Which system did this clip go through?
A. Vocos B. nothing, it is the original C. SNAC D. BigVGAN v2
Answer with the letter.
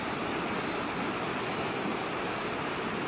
B